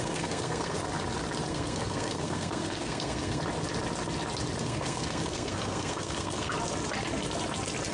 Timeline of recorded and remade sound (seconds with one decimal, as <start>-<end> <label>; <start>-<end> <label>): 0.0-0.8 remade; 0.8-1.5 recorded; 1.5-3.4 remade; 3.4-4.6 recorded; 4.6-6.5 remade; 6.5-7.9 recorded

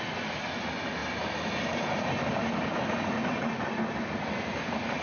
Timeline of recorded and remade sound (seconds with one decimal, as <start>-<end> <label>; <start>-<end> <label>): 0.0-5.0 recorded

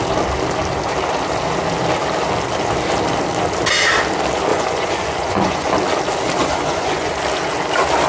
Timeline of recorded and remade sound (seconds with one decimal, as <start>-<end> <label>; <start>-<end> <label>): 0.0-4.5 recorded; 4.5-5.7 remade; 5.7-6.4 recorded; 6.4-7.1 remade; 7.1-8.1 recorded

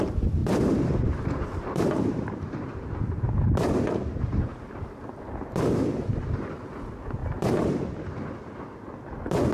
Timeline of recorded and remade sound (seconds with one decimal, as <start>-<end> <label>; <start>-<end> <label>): 0.0-0.4 recorded; 0.4-5.5 remade; 5.5-7.2 recorded; 7.2-7.8 remade; 7.8-9.5 recorded